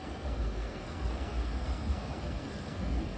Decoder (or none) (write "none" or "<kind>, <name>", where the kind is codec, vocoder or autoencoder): codec, SNAC